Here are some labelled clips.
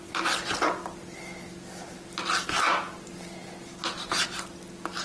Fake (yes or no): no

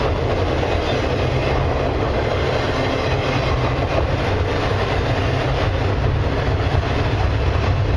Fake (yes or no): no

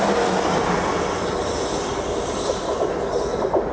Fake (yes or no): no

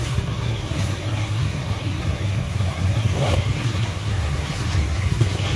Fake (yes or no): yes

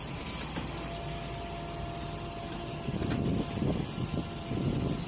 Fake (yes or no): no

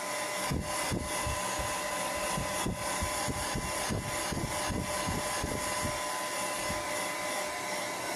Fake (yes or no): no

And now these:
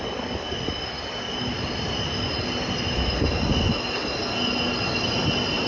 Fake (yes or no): no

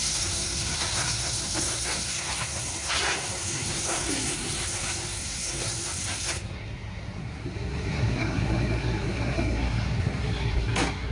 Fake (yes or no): yes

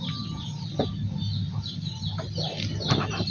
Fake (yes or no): no